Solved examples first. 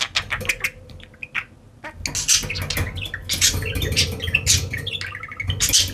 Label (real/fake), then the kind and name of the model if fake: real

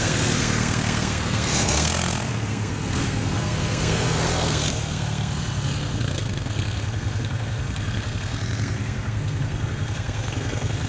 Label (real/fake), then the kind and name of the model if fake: fake, codec, SNAC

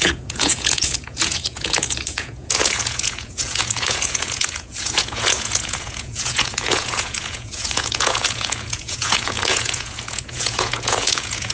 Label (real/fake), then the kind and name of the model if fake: fake, vocoder, Vocos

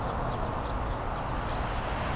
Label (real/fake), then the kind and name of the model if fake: real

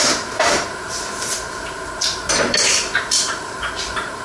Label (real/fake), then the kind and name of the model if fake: fake, vocoder, BigVGAN v2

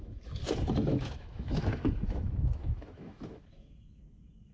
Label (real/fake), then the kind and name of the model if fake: fake, autoencoder, DAC-VAE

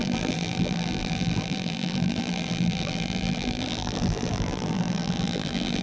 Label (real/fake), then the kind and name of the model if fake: fake, vocoder, BigVGAN v2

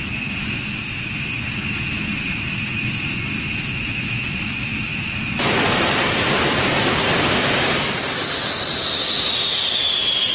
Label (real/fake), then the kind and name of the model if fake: real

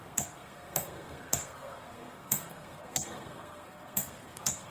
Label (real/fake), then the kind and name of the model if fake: fake, codec, SNAC